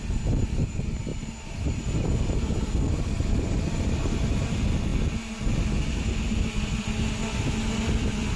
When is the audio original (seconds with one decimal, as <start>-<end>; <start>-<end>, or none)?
0.0-1.1; 4.3-8.4